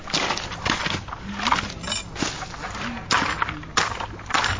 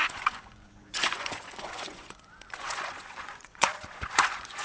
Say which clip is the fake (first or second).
second